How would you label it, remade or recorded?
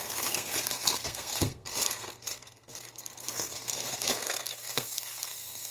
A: remade